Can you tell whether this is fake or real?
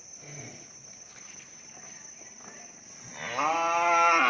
real